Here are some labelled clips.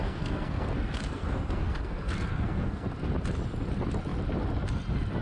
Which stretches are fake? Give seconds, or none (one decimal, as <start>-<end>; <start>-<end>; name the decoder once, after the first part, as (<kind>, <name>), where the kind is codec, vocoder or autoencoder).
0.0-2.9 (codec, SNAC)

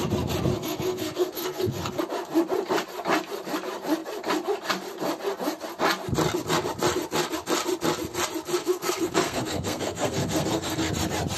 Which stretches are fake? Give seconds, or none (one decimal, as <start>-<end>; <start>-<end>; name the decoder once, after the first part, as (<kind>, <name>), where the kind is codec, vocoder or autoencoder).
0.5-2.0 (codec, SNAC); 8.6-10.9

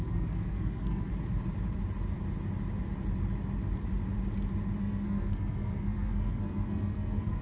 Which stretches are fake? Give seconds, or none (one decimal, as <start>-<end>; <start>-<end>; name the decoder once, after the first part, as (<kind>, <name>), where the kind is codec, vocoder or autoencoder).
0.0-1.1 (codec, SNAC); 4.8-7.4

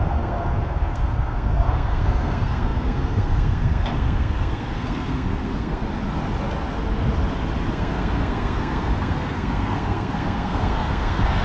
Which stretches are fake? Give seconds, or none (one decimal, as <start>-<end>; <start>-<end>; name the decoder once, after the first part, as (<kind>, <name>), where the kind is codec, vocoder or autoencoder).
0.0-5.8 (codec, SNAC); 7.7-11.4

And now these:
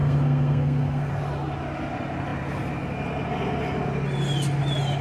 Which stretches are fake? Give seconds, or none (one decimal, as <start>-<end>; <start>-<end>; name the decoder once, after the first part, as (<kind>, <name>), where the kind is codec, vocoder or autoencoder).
0.0-1.1 (codec, SNAC)

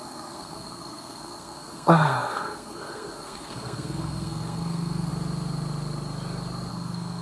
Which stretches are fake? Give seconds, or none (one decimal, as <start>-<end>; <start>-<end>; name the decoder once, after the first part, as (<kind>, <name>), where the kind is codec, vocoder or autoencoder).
0.0-5.1 (codec, SNAC); 6.7-7.2

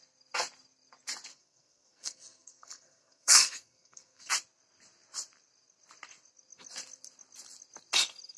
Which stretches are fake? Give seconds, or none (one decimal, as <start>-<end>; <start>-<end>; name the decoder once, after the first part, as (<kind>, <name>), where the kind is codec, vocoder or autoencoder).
1.3-4.3 (codec, SNAC)

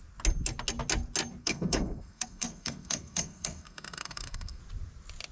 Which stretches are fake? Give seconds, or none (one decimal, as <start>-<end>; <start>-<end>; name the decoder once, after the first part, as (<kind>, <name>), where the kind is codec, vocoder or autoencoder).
1.4-4.6 (codec, SNAC)